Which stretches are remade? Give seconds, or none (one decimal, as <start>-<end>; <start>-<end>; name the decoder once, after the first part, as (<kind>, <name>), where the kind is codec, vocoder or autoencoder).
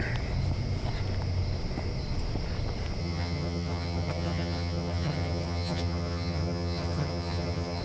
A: 3.0-7.8 (vocoder, HiFi-GAN)